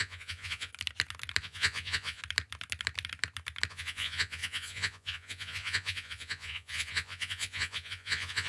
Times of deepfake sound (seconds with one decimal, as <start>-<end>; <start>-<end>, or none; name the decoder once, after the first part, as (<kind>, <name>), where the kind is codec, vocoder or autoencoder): 0.0-0.7 (vocoder, Vocos); 1.4-2.2; 3.7-8.5